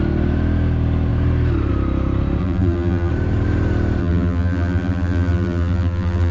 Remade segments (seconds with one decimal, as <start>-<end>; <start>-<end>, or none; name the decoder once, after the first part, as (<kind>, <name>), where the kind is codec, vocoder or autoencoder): 2.4-3.1 (vocoder, BigVGAN v2); 4.0-6.3